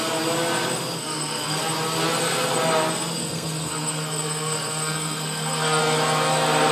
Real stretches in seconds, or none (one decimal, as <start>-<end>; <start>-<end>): 0.0-1.0; 1.6-3.2; 5.8-6.7